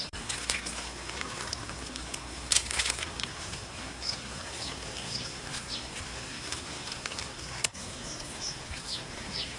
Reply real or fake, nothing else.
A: fake